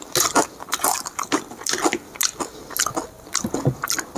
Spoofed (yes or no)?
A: no